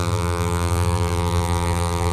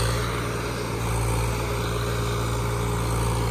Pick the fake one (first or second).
first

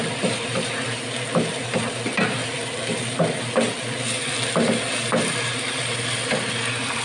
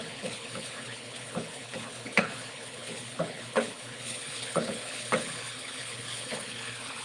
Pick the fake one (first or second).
second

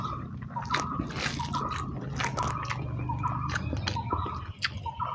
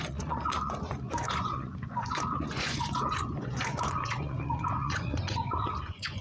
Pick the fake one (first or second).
second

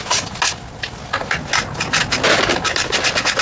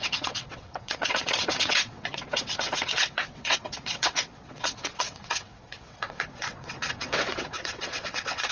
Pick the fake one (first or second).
second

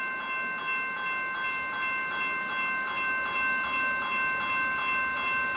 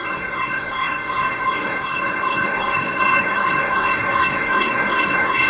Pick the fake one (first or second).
second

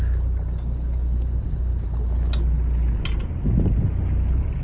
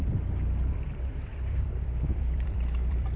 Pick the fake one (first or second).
second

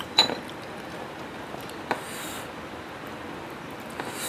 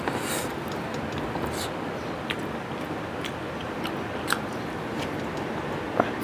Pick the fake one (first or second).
first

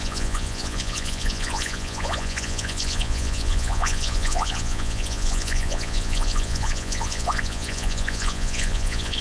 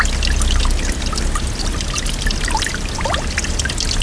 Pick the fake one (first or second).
first